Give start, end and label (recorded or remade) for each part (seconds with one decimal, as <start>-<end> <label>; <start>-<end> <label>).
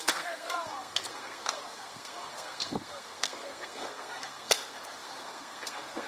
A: 0.0-6.1 remade